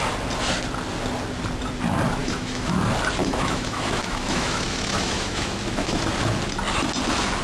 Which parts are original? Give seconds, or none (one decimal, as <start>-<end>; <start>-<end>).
0.0-2.2; 2.8-3.2; 6.0-7.4